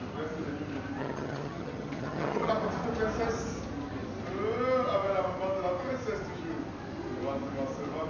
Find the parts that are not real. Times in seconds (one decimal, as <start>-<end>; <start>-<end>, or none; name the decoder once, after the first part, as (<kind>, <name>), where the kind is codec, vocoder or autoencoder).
1.0-2.5 (vocoder, HiFi-GAN)